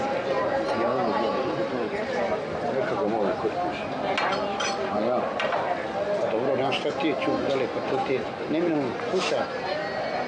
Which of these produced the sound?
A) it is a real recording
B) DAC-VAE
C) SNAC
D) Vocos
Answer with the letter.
A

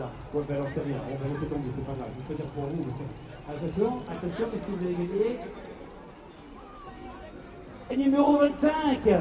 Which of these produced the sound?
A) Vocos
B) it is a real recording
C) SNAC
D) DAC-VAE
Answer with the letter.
B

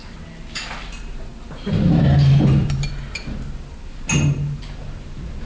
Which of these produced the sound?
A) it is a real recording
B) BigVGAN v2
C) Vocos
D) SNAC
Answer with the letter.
A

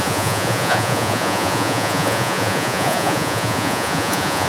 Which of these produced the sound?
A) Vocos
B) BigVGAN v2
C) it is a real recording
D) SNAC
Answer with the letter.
A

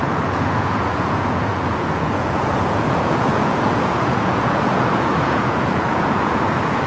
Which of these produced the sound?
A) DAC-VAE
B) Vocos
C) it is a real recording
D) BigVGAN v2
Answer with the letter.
B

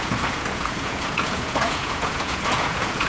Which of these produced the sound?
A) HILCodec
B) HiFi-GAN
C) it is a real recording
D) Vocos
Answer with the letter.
D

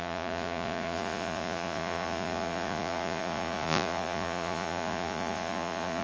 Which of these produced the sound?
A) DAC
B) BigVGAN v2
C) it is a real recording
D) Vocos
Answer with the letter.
D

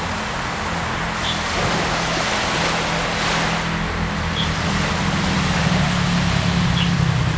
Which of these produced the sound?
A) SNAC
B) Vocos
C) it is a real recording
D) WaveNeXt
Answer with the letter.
C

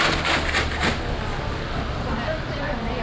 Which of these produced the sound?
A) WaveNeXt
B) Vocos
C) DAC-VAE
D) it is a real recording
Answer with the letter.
D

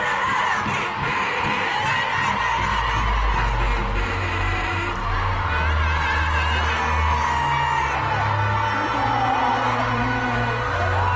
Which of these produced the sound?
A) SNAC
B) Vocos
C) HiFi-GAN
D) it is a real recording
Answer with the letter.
D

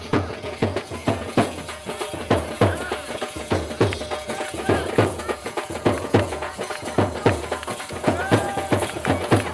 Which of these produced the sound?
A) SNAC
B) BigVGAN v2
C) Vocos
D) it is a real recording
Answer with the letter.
C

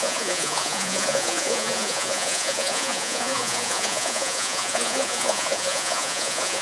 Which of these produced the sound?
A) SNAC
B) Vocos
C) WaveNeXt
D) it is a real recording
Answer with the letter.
B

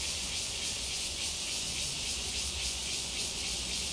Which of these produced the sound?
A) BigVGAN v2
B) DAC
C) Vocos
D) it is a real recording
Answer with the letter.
C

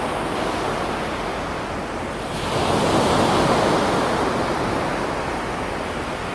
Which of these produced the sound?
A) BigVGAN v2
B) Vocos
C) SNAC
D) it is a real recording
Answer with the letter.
D